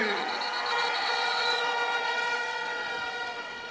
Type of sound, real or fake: fake